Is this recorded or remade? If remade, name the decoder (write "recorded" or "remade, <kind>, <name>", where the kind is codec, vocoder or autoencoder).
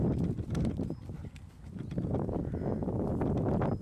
remade, vocoder, BigVGAN v2